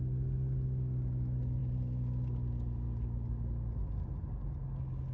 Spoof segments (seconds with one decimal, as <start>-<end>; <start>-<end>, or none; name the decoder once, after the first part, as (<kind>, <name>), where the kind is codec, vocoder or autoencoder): none